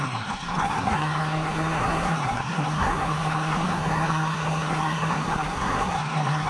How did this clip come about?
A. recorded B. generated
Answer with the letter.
B